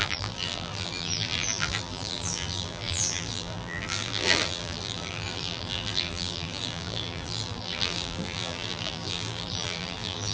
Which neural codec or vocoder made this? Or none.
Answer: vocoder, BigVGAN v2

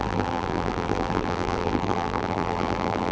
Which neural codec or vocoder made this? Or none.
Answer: vocoder, BigVGAN v2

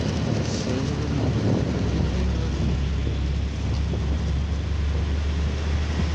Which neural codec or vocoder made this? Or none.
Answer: none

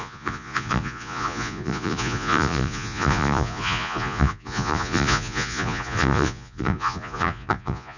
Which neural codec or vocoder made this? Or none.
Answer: vocoder, Vocos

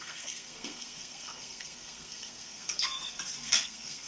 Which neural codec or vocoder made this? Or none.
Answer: codec, SNAC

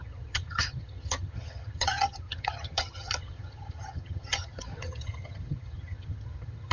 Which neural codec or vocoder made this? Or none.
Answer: vocoder, HiFi-GAN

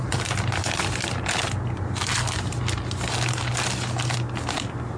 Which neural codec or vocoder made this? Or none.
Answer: none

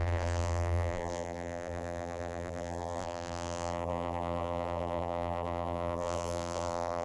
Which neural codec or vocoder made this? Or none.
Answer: vocoder, BigVGAN v2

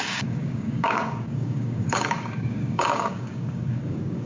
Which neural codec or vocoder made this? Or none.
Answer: codec, DAC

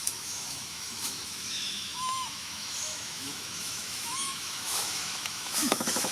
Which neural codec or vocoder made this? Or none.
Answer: autoencoder, DAC-VAE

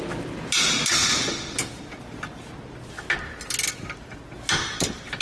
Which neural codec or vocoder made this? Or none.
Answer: none